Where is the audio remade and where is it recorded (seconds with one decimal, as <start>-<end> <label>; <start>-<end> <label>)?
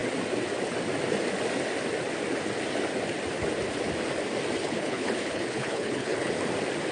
0.0-4.6 recorded; 4.6-6.3 remade; 6.3-6.9 recorded